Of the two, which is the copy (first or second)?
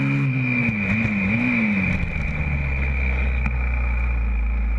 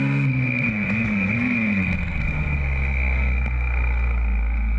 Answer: second